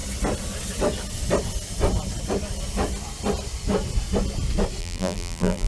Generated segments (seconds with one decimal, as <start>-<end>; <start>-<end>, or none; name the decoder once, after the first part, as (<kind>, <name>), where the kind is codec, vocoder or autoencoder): 4.8-5.7 (vocoder, BigVGAN v2)